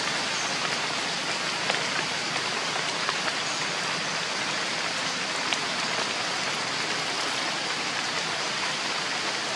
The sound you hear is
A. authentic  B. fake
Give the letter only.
A